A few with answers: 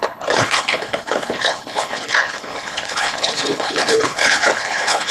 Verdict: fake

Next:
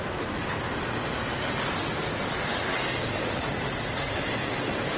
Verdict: real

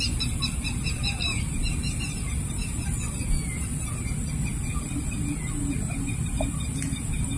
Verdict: real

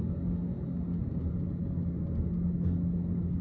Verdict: real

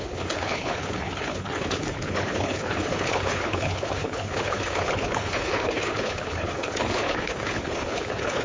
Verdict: fake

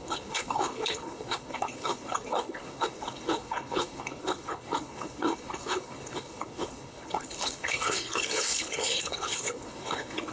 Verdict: fake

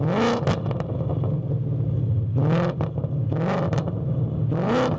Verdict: real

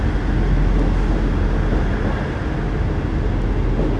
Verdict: real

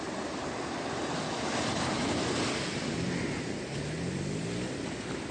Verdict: real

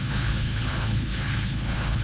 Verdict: fake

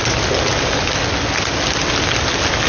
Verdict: real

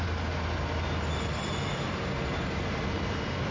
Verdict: real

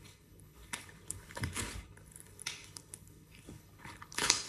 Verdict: fake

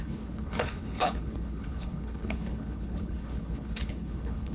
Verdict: fake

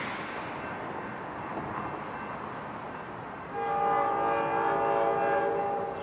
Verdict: real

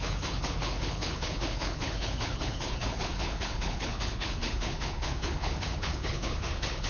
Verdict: fake